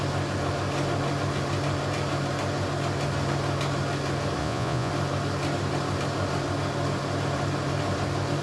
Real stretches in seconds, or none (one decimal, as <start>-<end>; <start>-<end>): 0.0-4.4; 4.9-8.4